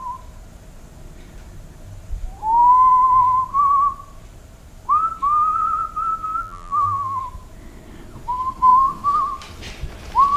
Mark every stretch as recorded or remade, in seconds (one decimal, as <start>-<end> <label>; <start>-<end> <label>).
0.0-6.4 recorded; 6.4-7.2 remade; 7.2-10.4 recorded